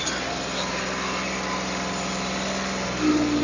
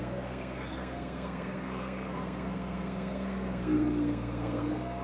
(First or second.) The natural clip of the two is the first